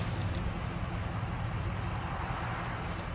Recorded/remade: recorded